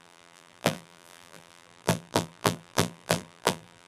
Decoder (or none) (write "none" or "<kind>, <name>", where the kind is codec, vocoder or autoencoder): vocoder, BigVGAN v2